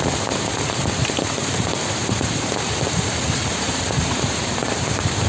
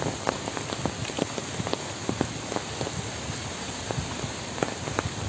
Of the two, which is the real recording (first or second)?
second